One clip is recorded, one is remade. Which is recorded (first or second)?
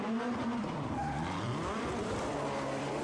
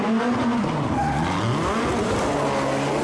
second